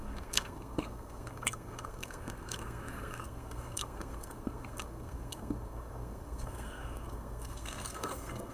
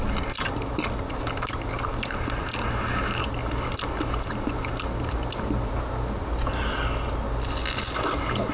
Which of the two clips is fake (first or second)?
first